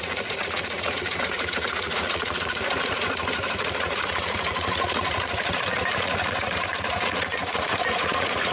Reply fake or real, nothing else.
fake